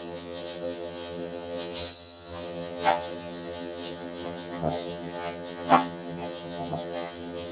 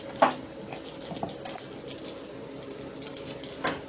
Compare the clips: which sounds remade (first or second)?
first